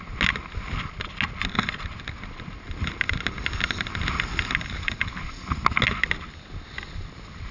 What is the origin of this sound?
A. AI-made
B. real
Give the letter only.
B